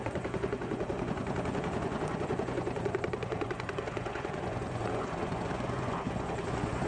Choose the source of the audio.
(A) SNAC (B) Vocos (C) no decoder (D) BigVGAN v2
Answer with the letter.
B